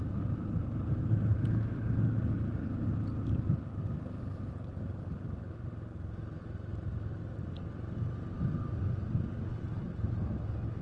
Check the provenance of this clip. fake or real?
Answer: real